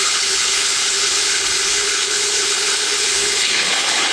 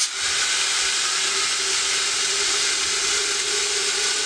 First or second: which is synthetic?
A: first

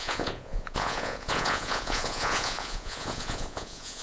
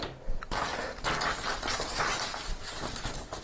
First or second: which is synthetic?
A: first